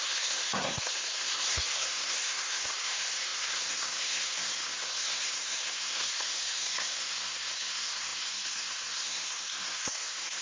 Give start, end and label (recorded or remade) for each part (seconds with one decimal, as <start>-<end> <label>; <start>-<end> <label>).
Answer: 0.0-10.4 remade